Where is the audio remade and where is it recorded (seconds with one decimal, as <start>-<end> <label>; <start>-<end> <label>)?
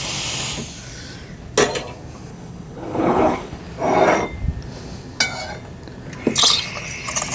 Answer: 0.0-2.3 recorded; 2.3-3.6 remade; 3.6-7.3 recorded